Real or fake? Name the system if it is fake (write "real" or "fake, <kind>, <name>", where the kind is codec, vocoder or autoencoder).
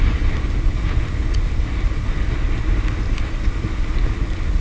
real